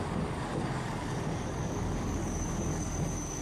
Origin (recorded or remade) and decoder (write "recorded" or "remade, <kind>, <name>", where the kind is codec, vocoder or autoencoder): remade, codec, DAC